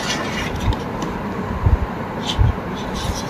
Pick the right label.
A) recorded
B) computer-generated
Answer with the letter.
B